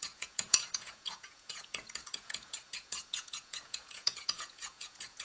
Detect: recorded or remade remade